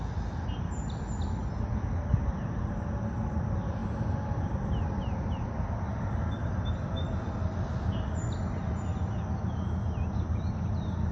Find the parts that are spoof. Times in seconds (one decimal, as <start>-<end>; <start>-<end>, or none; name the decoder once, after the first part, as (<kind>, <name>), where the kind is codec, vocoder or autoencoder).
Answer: none